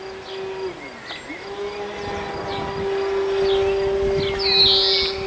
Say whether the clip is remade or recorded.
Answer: recorded